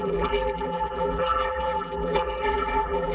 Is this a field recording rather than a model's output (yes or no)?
no